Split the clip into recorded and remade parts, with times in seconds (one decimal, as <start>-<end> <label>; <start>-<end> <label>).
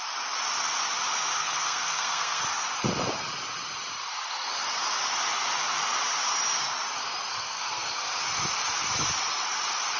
0.0-1.4 recorded; 1.4-2.4 remade; 2.4-7.3 recorded; 7.3-8.2 remade; 8.2-10.0 recorded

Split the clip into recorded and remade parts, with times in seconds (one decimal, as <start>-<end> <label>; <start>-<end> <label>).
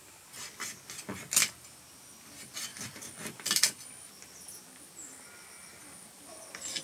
0.0-2.7 recorded; 2.7-3.9 remade; 3.9-5.6 recorded; 5.6-6.8 remade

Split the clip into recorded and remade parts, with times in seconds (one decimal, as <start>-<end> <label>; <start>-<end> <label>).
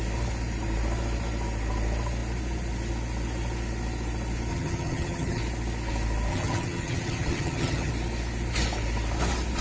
0.0-4.5 recorded; 4.5-5.4 remade; 5.4-6.3 recorded; 6.3-7.9 remade; 7.9-9.6 recorded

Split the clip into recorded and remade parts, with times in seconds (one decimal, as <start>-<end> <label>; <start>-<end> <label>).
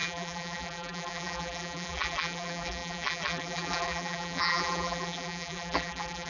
0.0-6.3 remade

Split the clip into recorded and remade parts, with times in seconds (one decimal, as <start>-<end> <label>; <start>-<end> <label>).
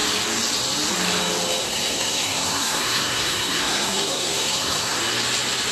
0.0-1.6 recorded; 1.6-5.0 remade; 5.0-5.7 recorded